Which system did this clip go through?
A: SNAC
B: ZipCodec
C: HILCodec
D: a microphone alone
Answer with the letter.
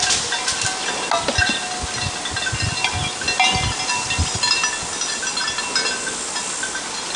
D